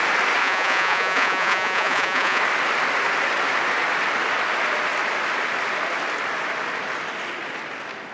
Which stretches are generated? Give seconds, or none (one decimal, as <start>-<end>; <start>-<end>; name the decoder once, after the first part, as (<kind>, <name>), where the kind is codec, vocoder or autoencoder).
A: 0.4-2.4 (vocoder, Vocos)